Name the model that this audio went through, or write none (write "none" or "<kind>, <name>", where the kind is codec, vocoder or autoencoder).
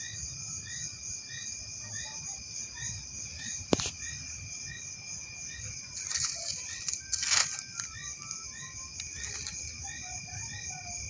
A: none